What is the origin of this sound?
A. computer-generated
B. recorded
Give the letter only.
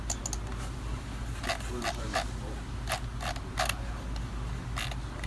B